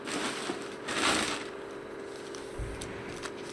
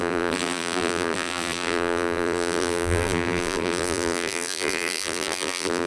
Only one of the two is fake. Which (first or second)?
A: second